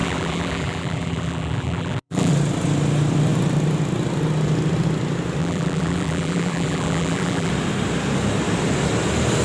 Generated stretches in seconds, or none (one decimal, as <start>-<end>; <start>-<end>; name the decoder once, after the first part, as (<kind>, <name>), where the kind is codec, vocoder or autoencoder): 0.0-2.3 (vocoder, BigVGAN v2); 5.4-7.5